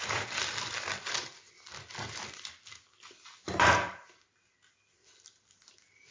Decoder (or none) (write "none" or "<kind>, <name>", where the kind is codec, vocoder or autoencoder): vocoder, BigVGAN v2